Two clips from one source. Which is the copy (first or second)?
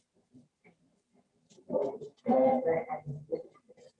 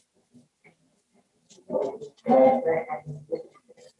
first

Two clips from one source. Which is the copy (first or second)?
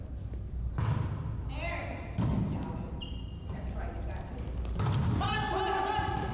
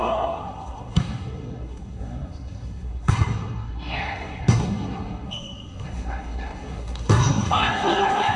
second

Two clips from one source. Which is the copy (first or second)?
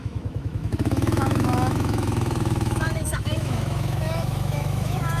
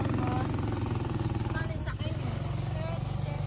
first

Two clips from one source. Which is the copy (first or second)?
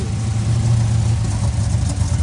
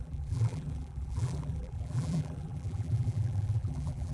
second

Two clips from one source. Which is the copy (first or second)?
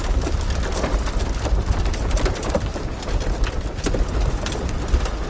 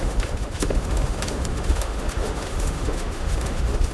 second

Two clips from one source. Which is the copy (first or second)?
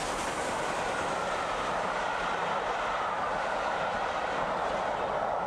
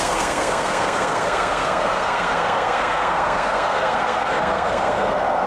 second